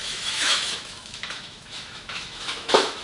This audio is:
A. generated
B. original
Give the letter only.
A